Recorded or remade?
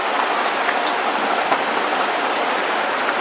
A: recorded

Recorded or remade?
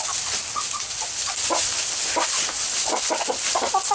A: recorded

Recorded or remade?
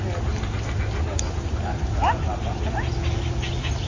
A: recorded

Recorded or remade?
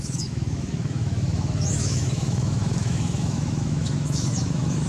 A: remade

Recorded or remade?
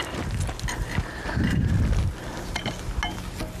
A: recorded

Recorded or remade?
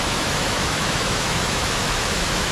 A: remade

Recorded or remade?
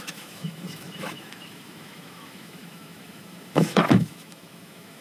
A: remade